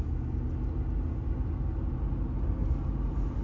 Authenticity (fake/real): real